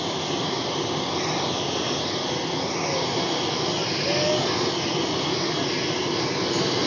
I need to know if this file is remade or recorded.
recorded